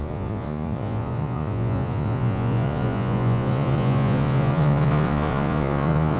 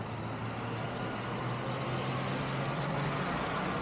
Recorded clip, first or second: second